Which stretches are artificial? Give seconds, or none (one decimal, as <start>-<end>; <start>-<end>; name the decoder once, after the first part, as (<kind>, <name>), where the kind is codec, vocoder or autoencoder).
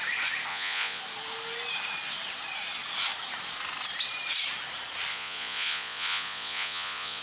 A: 0.5-1.0 (vocoder, Vocos); 5.1-7.2